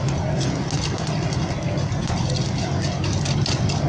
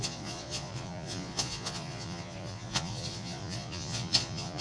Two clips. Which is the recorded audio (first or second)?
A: first